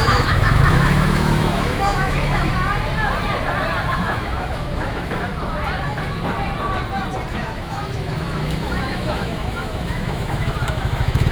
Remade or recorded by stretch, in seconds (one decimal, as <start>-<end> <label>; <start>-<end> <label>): 0.0-2.5 remade; 2.5-3.9 recorded; 3.9-5.3 remade; 5.3-7.3 recorded; 7.3-11.3 remade